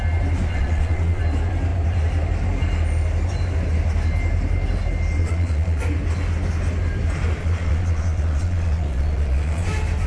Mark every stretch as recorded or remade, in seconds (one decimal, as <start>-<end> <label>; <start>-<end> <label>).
0.0-0.5 recorded; 0.5-1.2 remade; 1.2-5.2 recorded; 5.2-5.8 remade; 5.8-7.4 recorded; 7.4-9.7 remade; 9.7-10.1 recorded

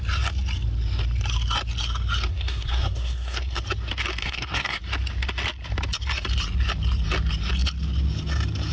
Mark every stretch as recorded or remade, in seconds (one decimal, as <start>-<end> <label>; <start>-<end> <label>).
0.0-2.3 recorded; 2.3-3.6 remade; 3.6-4.2 recorded; 4.2-4.8 remade; 4.8-8.7 recorded

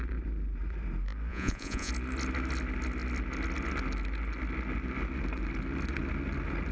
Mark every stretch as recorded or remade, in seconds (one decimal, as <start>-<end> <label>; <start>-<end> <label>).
0.0-1.3 recorded; 1.3-1.9 remade; 1.9-6.7 recorded

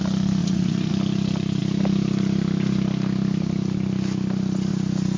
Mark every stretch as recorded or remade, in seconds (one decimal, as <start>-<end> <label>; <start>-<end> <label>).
0.0-0.4 recorded; 0.4-0.9 remade; 0.9-5.2 recorded

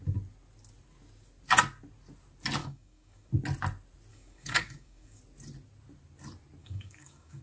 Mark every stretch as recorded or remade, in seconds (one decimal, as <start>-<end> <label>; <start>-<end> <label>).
0.0-2.6 recorded; 2.6-3.3 remade; 3.3-4.1 recorded; 4.1-5.2 remade; 5.2-6.6 recorded; 6.6-7.4 remade

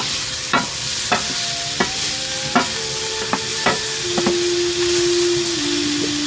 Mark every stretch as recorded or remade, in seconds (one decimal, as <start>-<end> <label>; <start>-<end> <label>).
0.0-3.5 recorded; 3.5-4.2 remade; 4.2-6.3 recorded

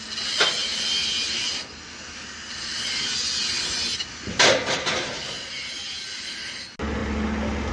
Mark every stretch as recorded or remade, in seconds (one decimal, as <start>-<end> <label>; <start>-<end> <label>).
0.0-0.6 recorded; 0.6-1.7 remade; 1.7-7.7 recorded

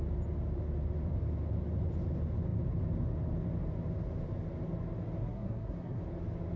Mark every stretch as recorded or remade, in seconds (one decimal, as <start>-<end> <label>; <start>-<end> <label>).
0.0-5.2 recorded; 5.2-6.0 remade; 6.0-6.6 recorded